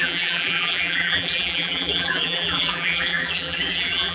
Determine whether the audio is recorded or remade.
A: remade